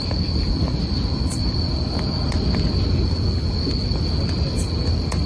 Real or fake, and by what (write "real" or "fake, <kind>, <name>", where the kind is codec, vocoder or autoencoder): real